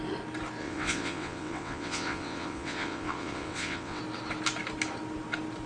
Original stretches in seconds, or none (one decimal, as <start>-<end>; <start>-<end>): 0.0-0.6; 4.0-5.7